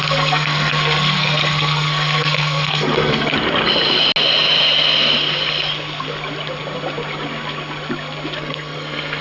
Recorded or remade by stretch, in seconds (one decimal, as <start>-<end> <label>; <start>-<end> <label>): 0.0-3.3 remade; 3.3-8.4 recorded; 8.4-9.2 remade